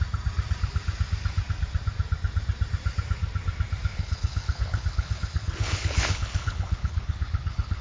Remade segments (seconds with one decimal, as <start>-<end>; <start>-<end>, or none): 3.9-7.8